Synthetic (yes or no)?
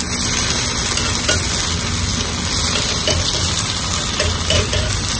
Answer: no